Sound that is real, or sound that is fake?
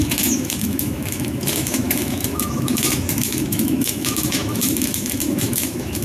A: fake